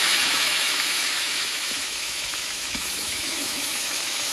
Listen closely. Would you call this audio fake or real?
fake